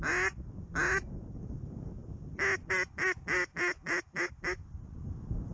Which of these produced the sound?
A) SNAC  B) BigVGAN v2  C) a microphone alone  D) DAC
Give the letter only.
C